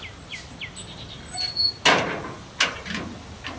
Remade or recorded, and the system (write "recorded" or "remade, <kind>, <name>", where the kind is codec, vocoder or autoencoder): recorded